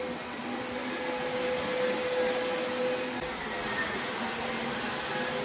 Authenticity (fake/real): real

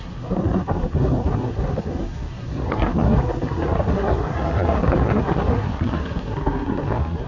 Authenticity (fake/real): fake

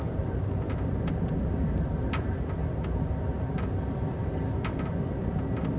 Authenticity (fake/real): real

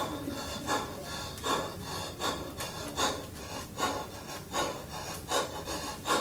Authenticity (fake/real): real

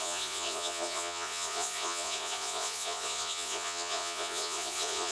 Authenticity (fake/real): fake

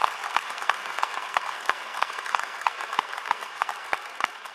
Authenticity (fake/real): fake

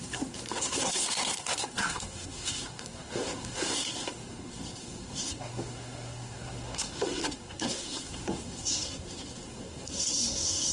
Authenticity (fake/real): fake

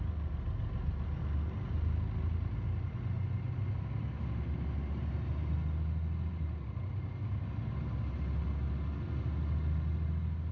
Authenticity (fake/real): real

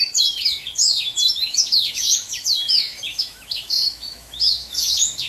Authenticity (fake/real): fake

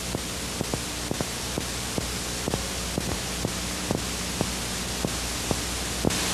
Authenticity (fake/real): real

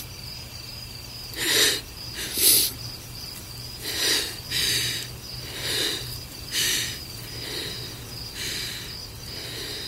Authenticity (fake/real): real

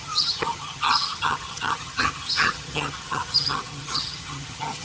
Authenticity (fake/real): fake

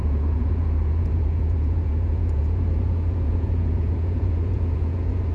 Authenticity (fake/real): fake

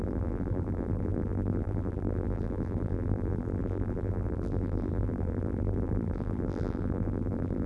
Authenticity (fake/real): fake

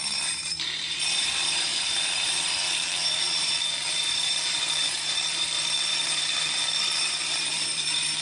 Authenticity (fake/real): fake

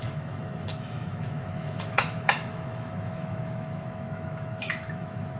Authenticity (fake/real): fake